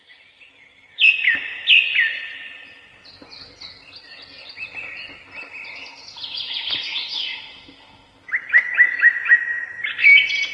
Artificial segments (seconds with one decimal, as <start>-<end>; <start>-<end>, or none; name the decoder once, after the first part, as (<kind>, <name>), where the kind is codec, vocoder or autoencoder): none